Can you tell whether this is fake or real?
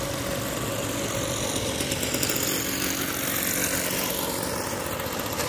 real